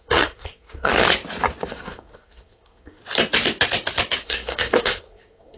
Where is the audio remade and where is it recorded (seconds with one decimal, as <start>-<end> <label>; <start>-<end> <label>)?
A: 0.0-0.9 remade; 0.9-1.7 recorded; 1.7-3.0 remade; 3.0-4.2 recorded; 4.2-5.6 remade